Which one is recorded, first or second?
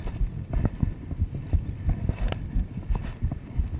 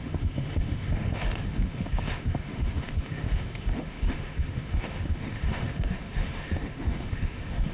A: first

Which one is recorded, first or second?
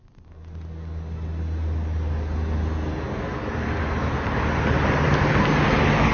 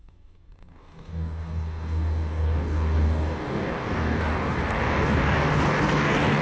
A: first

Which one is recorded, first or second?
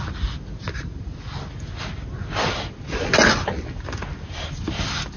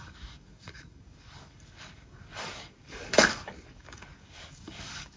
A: first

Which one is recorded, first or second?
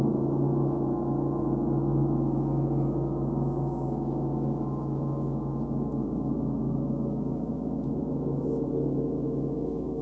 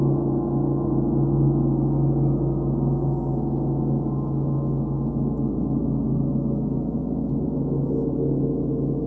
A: second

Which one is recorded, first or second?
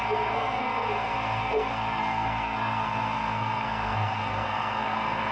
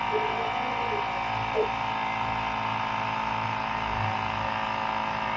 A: second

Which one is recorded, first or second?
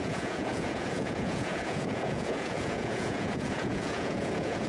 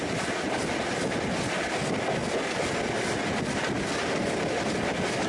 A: second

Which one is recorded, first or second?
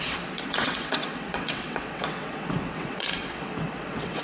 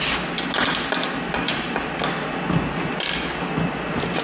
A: second